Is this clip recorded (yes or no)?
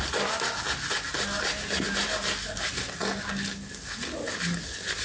yes